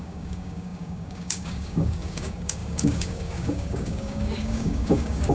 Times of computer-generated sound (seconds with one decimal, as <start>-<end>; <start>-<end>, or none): 0.0-5.3